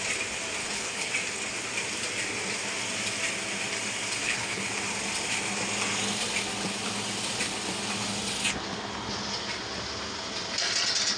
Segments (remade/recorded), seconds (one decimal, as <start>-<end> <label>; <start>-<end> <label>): 0.0-0.6 recorded; 0.6-1.1 remade; 1.1-4.2 recorded; 4.2-4.7 remade; 4.7-11.2 recorded